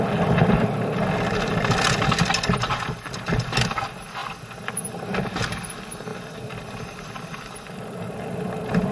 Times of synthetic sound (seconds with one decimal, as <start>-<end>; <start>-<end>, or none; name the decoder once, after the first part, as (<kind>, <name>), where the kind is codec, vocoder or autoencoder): none